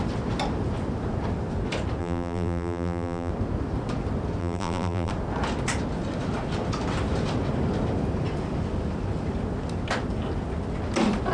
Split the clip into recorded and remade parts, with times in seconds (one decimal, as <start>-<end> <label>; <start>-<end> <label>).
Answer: 0.0-2.0 recorded; 2.0-3.3 remade; 3.3-4.4 recorded; 4.4-5.1 remade; 5.1-11.3 recorded